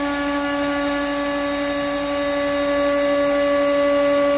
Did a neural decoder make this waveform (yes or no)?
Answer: no